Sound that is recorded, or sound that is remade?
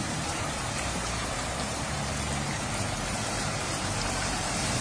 remade